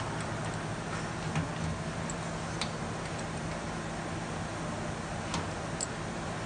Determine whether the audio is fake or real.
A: real